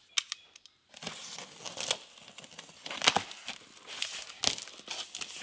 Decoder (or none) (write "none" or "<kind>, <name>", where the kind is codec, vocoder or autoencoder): none